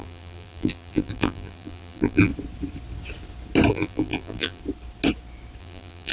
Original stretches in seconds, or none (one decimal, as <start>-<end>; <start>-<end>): 2.3-3.7; 4.6-5.6